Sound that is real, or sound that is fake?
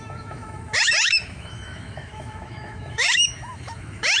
fake